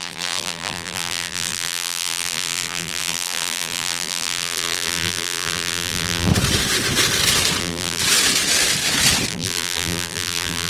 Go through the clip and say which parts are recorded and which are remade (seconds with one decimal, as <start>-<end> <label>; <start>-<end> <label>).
0.0-6.3 remade; 6.3-7.6 recorded; 7.6-8.0 remade; 8.0-9.3 recorded; 9.3-10.7 remade